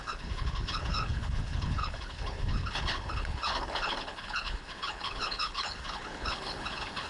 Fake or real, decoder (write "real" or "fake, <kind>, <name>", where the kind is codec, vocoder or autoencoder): fake, codec, HILCodec